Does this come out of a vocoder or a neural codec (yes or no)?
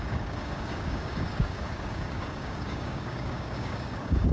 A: yes